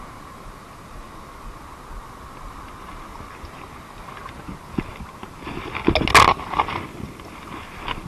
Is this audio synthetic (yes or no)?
no